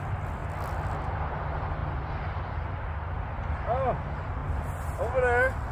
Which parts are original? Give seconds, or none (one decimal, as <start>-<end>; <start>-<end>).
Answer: 0.0-5.7